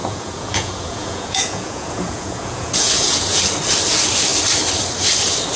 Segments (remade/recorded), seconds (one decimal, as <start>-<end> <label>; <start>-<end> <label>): 0.0-3.4 remade; 3.4-5.6 recorded